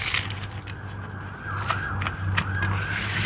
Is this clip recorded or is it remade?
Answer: recorded